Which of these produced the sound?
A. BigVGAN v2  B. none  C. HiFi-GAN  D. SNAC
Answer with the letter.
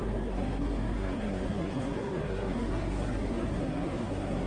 D